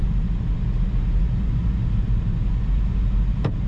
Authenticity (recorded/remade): recorded